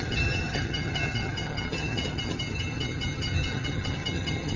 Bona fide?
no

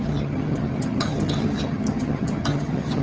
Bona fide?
no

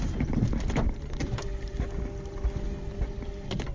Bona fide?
yes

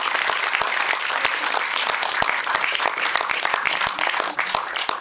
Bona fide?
yes